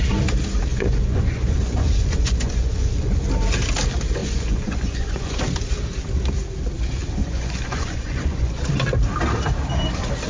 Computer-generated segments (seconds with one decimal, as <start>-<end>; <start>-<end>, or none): 0.7-3.2; 4.2-5.4; 7.2-8.6